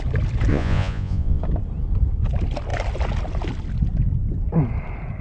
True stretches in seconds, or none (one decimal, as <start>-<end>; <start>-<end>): 0.0-0.5; 1.4-5.2

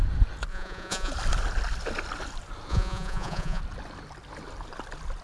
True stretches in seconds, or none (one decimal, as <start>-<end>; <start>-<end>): 0.0-0.5; 1.1-2.7; 3.6-5.2

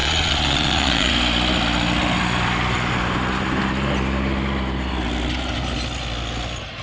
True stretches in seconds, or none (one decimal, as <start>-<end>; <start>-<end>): 1.1-6.8

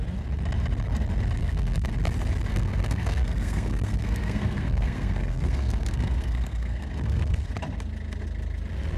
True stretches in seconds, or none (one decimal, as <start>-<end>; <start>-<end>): 0.0-1.4; 1.9-2.5; 7.5-9.0

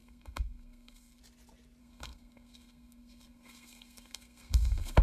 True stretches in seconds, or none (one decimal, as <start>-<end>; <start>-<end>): 1.2-1.8

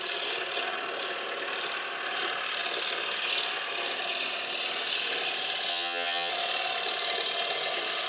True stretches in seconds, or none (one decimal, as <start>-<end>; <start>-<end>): 0.0-5.7; 6.3-8.1

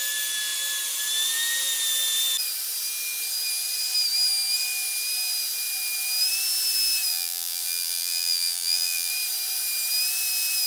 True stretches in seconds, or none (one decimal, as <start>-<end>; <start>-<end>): 0.0-7.1; 9.1-10.7

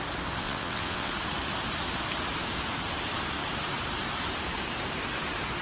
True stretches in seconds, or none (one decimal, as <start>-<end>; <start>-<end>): 0.0-0.4; 1.1-5.6